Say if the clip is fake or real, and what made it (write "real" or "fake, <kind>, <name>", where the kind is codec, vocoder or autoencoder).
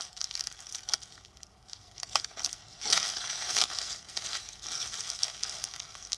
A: fake, codec, SNAC